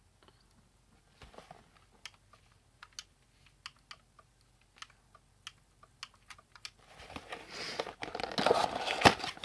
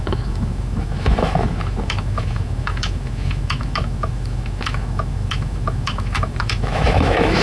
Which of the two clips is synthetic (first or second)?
second